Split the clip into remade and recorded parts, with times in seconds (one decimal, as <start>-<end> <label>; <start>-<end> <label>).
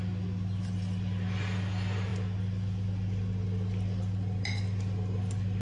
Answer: 0.0-5.6 recorded